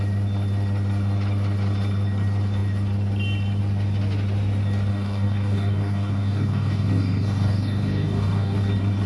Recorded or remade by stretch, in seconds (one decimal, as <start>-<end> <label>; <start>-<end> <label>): 0.0-4.9 recorded; 4.9-8.7 remade; 8.7-9.1 recorded